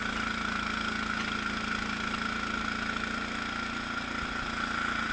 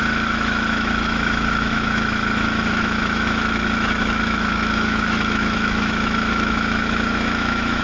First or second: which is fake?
second